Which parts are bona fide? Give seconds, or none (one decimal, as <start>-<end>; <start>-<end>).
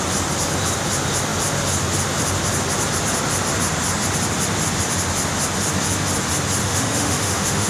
0.0-6.6